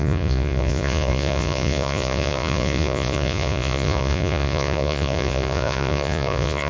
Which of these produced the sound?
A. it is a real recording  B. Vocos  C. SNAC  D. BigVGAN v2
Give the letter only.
B